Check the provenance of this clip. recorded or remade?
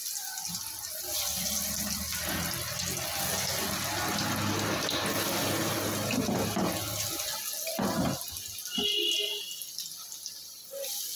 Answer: recorded